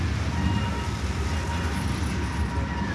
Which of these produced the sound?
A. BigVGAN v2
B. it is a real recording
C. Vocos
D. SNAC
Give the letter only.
B